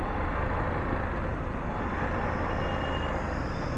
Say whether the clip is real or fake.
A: real